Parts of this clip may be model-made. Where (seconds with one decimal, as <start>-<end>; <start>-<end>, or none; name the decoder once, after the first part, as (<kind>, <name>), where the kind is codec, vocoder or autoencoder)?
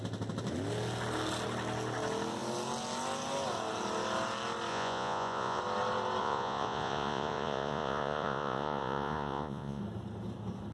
4.7-5.6 (vocoder, Vocos); 6.2-9.8